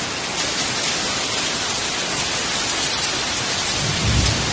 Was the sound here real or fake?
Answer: real